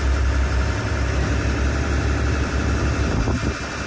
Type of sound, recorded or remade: recorded